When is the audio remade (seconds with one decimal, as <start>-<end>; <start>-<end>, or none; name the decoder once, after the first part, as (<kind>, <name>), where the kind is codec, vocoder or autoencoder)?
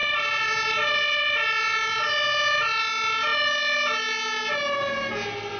none